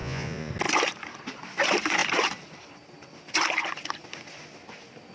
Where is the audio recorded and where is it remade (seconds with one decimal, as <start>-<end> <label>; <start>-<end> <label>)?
0.0-0.5 remade; 0.5-5.1 recorded